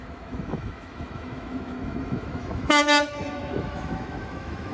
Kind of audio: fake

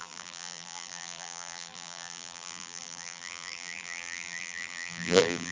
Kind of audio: fake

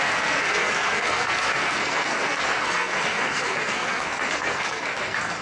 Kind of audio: fake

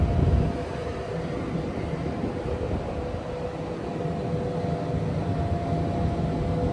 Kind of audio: real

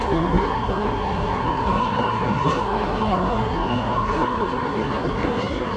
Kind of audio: fake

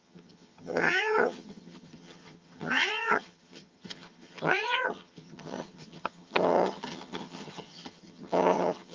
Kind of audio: fake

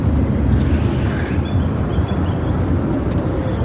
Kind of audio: real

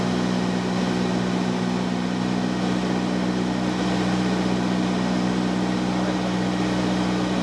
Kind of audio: real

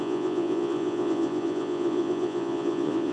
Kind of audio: fake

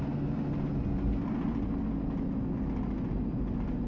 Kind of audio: real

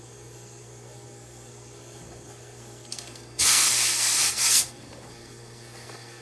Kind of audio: fake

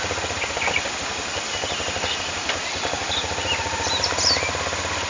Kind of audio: real